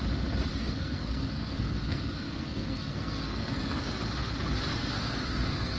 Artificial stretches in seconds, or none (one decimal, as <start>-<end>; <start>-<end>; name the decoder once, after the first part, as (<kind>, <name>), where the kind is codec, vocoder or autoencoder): 0.5-4.0 (codec, SNAC); 4.7-5.8